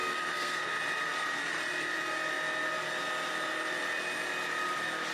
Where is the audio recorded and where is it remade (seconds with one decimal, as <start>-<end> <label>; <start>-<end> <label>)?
0.0-0.7 remade; 0.7-5.1 recorded